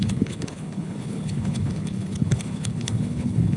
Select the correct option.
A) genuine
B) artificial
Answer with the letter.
B